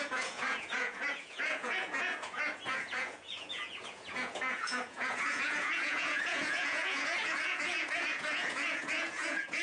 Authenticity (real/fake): fake